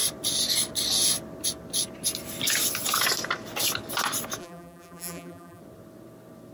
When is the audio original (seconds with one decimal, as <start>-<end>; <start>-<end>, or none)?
0.0-4.4; 5.6-6.5